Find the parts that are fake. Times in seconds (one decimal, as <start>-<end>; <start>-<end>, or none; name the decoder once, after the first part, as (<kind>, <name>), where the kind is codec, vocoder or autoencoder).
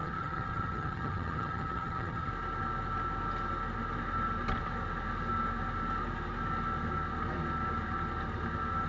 0.0-2.3 (vocoder, HiFi-GAN)